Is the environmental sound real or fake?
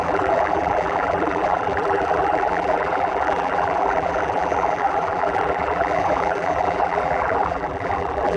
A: fake